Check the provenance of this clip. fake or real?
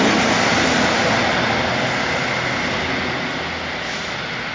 real